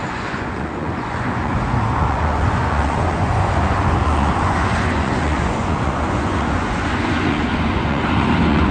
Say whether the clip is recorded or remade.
remade